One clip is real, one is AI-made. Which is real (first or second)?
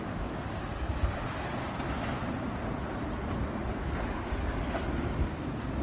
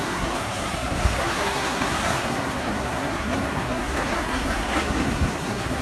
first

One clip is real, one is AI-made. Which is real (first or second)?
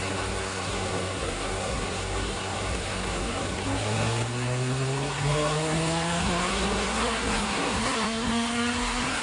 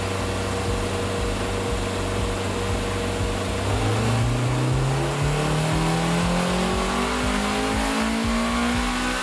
second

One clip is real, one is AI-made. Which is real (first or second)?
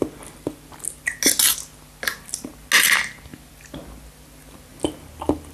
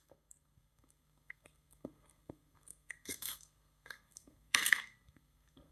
first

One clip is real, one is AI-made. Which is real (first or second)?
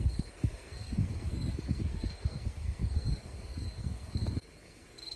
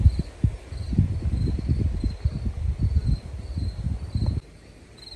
second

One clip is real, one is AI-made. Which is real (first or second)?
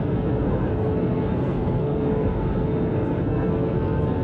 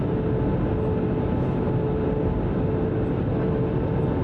second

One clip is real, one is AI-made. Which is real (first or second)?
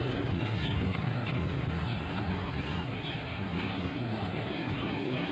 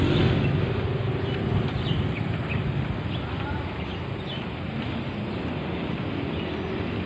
second